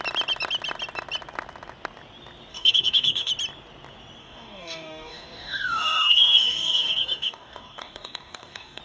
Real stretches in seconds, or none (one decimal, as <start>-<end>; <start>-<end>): 0.0-2.5; 3.3-4.2